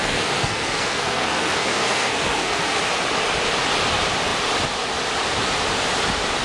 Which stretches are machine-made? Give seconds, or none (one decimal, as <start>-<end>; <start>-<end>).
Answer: 0.0-2.8

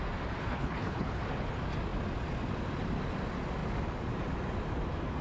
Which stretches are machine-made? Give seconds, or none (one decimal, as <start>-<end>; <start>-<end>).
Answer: 0.4-1.2